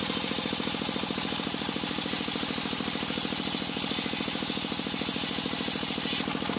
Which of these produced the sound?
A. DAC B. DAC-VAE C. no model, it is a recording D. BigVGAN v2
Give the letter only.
C